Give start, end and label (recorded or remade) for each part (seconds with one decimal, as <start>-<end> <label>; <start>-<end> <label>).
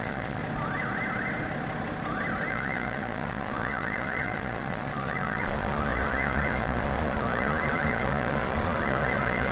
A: 0.0-0.4 remade; 0.4-2.5 recorded; 2.5-9.5 remade